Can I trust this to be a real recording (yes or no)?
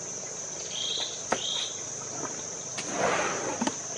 yes